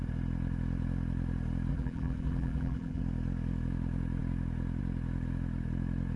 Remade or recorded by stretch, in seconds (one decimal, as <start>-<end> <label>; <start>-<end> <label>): 0.0-1.7 recorded; 1.7-3.0 remade; 3.0-6.2 recorded